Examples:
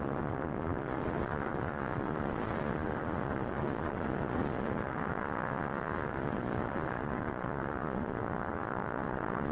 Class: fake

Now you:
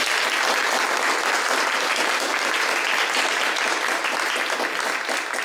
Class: real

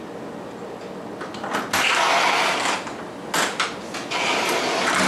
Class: real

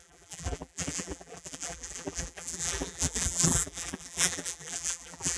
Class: fake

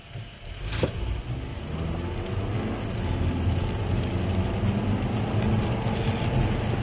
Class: real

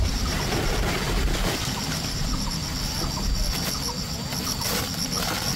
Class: real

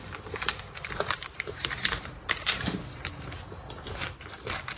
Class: fake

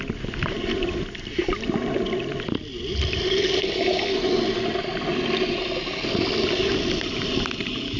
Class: real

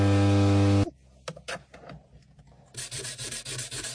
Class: real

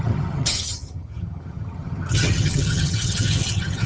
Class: fake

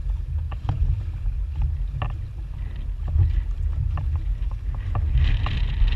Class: real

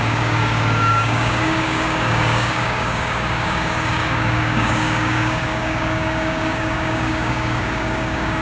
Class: fake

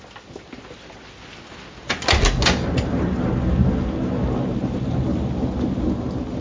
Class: real